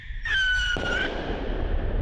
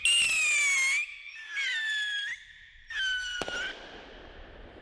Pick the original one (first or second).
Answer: second